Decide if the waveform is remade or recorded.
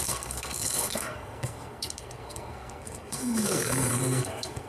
remade